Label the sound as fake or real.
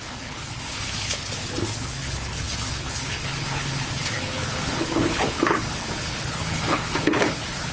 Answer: fake